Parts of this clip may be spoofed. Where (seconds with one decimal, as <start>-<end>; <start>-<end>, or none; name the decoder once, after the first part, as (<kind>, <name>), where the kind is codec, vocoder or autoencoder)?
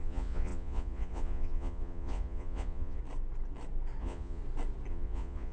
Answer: 0.0-3.0 (vocoder, Vocos); 4.0-4.4; 4.9-5.5